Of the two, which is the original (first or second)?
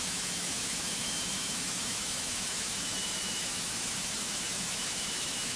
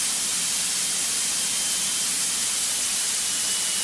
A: second